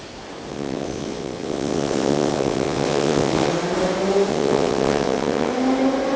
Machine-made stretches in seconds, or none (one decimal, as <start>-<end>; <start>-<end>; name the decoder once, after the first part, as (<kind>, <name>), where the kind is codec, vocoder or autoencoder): 0.5-3.5 (vocoder, WaveNeXt); 4.3-5.5